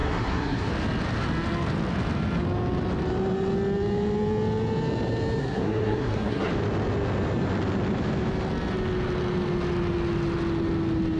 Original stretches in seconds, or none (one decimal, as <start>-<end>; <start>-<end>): 0.7-5.4; 6.5-11.2